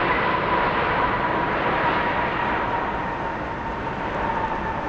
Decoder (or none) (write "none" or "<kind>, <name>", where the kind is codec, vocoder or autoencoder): none